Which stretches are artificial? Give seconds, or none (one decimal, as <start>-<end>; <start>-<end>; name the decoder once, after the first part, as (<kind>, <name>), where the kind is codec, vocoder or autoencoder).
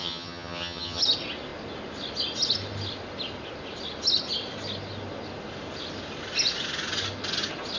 0.0-1.0 (vocoder, HiFi-GAN)